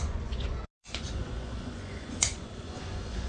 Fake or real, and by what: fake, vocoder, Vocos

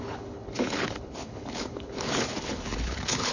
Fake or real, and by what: fake, codec, HILCodec